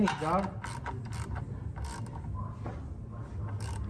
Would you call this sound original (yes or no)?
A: yes